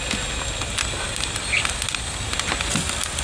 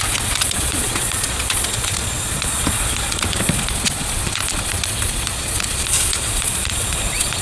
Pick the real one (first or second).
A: first